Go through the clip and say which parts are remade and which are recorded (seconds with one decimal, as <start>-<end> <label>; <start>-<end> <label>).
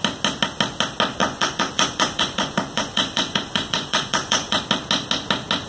0.0-1.2 recorded; 1.2-4.6 remade; 4.6-5.7 recorded